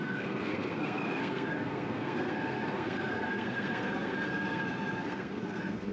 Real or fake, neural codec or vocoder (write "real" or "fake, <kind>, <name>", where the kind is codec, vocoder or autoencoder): fake, codec, SNAC